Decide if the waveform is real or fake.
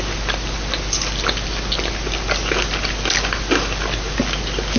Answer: real